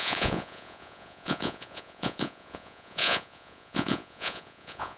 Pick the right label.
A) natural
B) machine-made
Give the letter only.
B